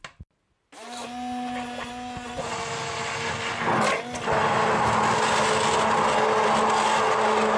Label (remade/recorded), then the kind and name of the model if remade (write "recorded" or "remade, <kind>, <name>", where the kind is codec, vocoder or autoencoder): recorded